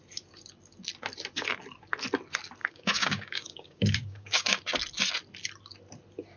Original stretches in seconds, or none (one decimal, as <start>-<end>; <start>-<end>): 0.0-2.6; 4.6-6.4